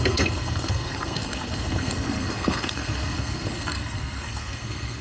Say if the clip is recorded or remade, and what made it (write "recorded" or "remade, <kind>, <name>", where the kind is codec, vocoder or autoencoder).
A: remade, codec, SNAC